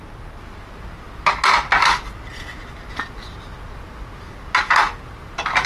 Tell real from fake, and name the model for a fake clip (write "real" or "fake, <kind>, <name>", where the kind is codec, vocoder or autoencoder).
real